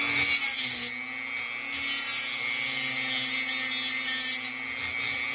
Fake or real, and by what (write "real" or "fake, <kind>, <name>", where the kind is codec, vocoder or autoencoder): real